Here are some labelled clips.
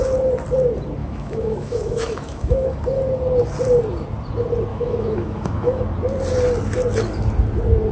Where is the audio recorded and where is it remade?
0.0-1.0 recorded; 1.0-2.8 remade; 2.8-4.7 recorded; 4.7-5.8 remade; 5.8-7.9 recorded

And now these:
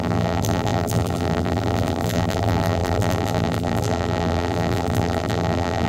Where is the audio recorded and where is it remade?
0.0-5.9 remade

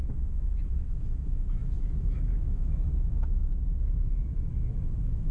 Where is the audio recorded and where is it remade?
0.0-3.4 remade; 3.4-3.9 recorded; 3.9-5.3 remade